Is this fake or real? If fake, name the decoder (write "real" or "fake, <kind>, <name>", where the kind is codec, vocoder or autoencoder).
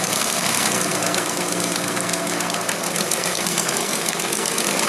fake, codec, SNAC